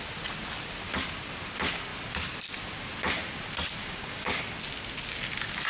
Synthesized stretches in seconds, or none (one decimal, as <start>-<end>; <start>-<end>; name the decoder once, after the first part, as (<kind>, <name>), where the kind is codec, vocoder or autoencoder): 3.8-4.4 (codec, DAC)